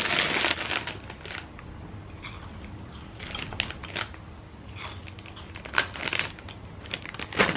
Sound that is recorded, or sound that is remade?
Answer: recorded